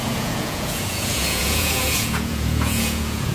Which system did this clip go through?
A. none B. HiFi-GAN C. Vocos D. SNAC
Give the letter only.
C